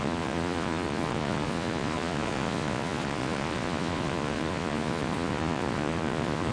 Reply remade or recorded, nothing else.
remade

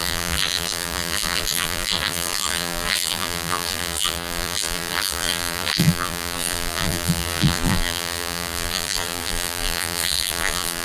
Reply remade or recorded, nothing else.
remade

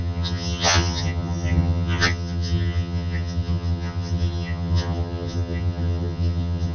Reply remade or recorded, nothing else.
remade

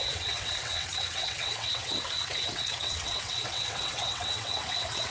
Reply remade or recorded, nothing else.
remade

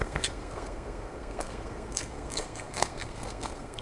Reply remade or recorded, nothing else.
remade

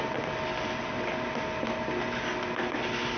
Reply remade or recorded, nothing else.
recorded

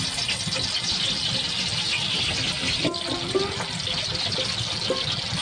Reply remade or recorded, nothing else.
recorded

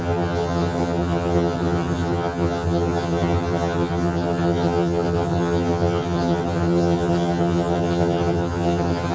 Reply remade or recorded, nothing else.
remade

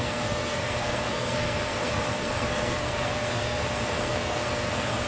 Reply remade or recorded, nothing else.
remade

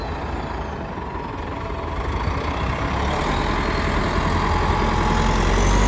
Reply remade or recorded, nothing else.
recorded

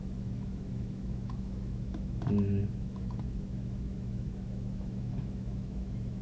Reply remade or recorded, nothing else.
remade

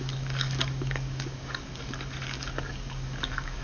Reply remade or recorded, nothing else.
remade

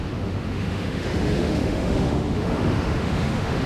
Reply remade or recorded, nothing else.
remade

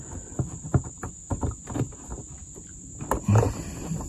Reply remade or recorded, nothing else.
recorded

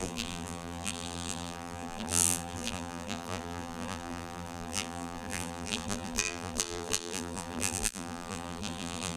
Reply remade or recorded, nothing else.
remade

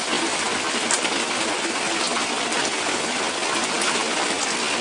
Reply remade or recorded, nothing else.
recorded